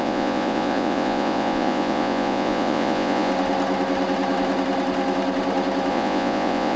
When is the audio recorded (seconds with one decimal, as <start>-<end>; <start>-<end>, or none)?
3.3-5.9